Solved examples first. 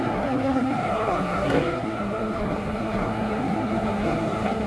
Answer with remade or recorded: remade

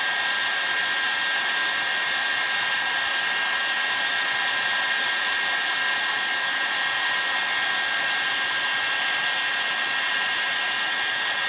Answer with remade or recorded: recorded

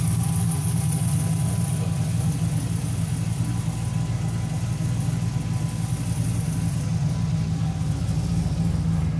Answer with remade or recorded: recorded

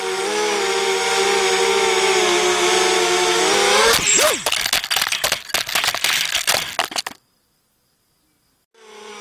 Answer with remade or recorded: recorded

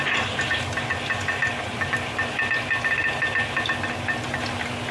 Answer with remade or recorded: recorded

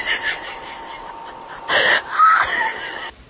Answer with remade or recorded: recorded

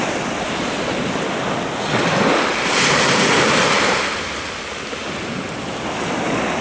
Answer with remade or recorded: recorded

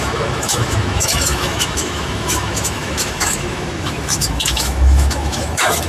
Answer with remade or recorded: remade